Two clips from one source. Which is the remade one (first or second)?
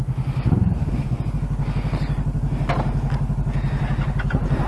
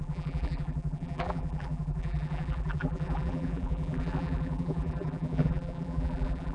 second